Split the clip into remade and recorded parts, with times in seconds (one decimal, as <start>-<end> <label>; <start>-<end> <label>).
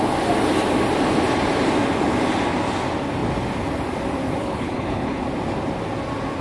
0.0-4.4 recorded; 4.4-5.2 remade; 5.2-6.4 recorded